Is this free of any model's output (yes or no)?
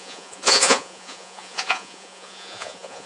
no